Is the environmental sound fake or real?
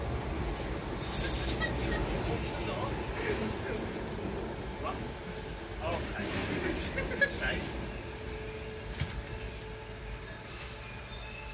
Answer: real